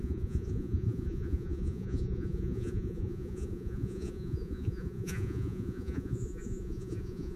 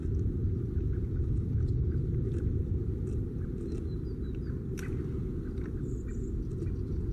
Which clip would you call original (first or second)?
second